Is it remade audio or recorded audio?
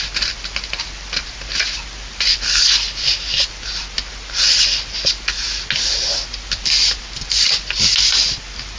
recorded